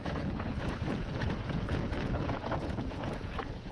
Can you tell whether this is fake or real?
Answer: fake